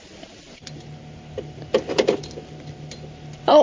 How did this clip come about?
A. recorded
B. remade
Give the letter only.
B